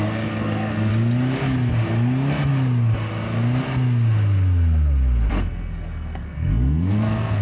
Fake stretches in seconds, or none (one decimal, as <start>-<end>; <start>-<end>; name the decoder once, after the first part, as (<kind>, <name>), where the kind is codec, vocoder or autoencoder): 0.0-0.9 (codec, SNAC); 5.3-7.4